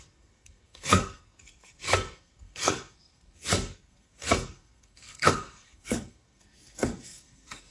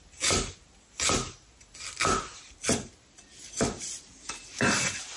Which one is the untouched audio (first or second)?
second